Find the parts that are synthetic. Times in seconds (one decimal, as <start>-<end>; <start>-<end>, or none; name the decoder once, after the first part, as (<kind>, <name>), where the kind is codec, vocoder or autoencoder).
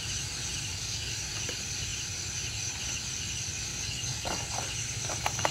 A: 0.7-1.3 (codec, DAC); 3.7-4.5